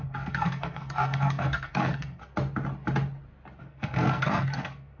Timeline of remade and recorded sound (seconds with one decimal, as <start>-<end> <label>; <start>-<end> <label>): 0.0-2.2 remade; 2.2-3.6 recorded; 3.6-5.0 remade